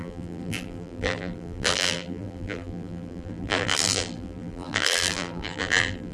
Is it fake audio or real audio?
fake